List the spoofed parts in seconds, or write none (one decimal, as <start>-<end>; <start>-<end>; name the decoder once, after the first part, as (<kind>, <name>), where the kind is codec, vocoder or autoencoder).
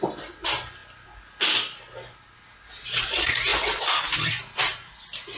none